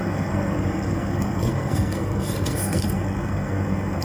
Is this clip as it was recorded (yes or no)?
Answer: no